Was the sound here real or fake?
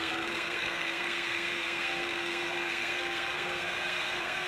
fake